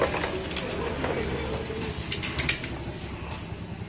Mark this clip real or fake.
real